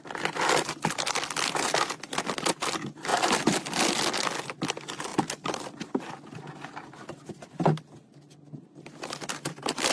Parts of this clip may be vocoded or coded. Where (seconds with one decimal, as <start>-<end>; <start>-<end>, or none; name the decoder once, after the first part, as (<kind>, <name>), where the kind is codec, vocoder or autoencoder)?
3.1-3.8 (vocoder, BigVGAN v2); 5.1-5.6